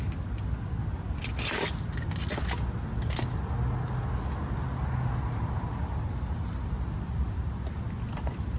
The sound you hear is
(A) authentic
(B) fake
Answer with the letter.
A